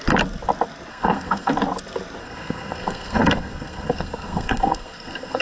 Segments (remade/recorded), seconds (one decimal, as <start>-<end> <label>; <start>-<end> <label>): 0.0-0.9 recorded; 0.9-1.5 remade; 1.5-2.2 recorded; 2.2-5.4 remade